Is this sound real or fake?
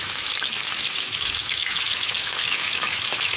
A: fake